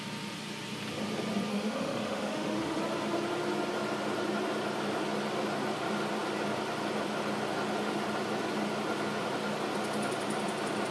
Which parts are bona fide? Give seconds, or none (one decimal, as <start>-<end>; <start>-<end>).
0.0-1.5; 2.8-10.9